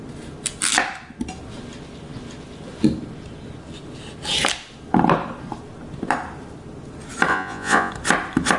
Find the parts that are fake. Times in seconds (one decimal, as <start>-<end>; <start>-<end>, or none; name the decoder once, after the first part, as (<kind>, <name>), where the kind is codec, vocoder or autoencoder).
7.3-7.9 (vocoder, Vocos)